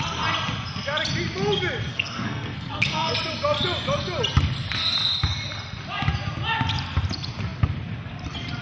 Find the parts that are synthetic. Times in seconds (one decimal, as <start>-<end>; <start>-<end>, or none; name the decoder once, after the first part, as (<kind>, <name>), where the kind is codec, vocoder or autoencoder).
1.9-3.1 (codec, SNAC)